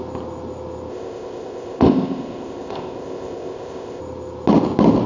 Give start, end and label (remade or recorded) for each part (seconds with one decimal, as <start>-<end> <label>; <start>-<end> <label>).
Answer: 0.0-0.9 recorded; 0.9-4.0 remade; 4.0-5.1 recorded